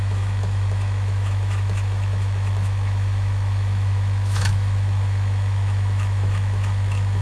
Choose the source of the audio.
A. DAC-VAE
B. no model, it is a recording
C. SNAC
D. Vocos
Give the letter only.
A